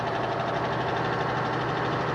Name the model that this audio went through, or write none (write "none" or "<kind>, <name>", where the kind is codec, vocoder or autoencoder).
none